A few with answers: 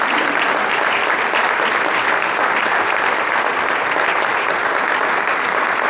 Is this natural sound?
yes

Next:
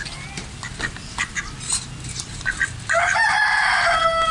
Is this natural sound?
yes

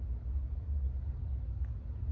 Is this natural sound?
yes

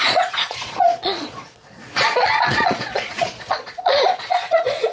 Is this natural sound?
no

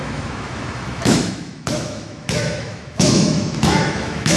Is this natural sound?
no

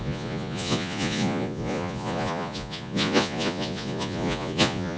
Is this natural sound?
no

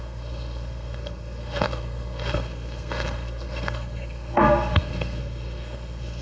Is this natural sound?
no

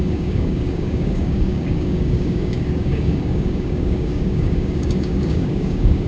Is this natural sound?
no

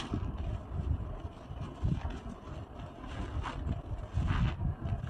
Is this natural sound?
yes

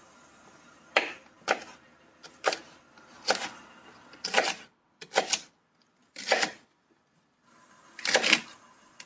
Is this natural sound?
yes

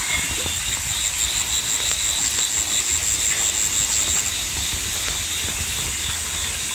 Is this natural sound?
yes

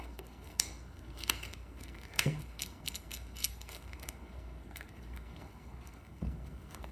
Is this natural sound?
no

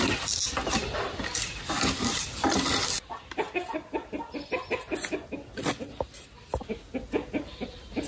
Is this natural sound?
yes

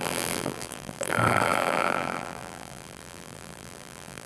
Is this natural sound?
no